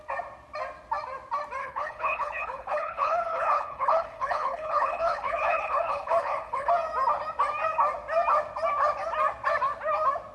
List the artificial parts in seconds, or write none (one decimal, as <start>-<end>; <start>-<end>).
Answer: 1.6-6.7